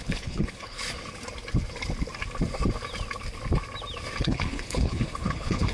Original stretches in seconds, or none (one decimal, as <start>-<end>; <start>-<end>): 0.8-4.2